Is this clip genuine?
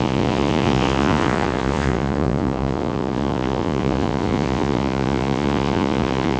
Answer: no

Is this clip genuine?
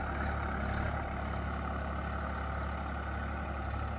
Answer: yes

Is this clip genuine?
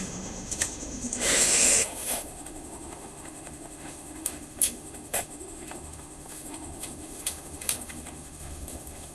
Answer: no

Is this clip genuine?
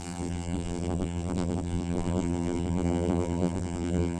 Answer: no